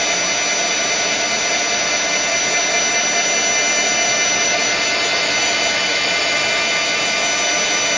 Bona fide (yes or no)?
yes